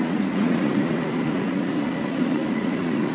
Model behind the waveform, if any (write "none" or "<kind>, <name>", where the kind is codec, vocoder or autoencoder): vocoder, Vocos